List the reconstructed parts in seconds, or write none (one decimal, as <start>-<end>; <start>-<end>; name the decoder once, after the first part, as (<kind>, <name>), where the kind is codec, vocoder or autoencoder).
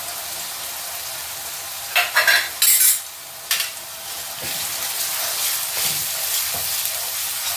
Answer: none